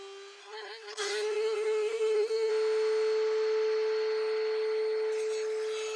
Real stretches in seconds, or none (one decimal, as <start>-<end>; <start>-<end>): 0.0-0.4; 2.5-6.0